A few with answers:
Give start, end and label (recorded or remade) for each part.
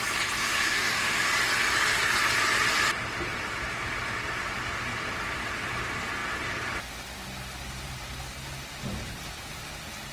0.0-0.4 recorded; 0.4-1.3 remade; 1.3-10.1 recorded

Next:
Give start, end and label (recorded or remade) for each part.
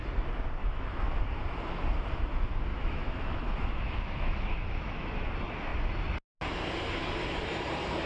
0.0-0.6 recorded; 0.6-1.2 remade; 1.2-2.7 recorded; 2.7-5.3 remade; 5.3-8.1 recorded